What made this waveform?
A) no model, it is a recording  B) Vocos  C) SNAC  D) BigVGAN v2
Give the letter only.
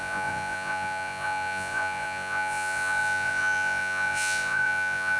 B